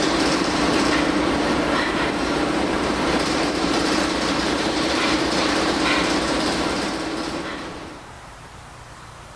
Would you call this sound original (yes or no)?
no